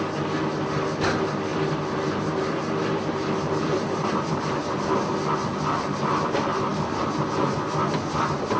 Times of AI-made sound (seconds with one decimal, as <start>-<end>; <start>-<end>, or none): 1.5-4.4